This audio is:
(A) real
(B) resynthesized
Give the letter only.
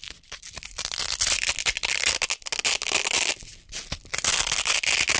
A